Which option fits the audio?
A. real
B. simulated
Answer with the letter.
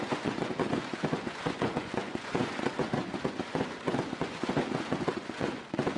B